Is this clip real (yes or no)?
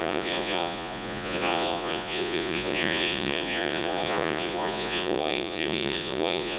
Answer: no